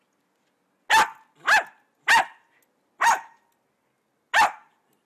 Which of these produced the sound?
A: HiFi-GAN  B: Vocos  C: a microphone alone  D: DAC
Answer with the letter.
C